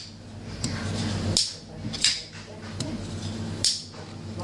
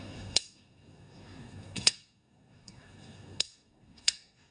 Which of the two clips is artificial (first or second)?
second